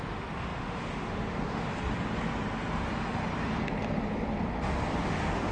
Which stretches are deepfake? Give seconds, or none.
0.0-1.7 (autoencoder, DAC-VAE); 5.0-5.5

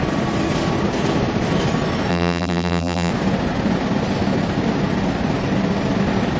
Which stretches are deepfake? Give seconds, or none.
2.1-3.1 (vocoder, BigVGAN v2)

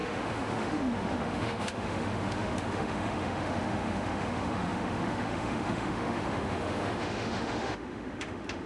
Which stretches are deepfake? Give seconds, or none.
0.0-8.7 (autoencoder, DAC-VAE)

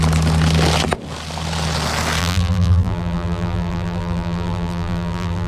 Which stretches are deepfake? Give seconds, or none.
2.2-5.5 (vocoder, BigVGAN v2)

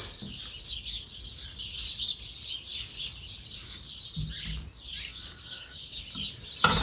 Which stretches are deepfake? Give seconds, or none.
5.1-6.0 (codec, DAC)

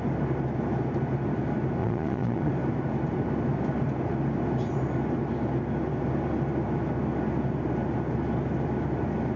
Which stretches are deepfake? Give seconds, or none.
1.8-2.5 (vocoder, Vocos)